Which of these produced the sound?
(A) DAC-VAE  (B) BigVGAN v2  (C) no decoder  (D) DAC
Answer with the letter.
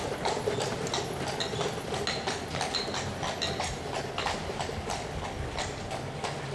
C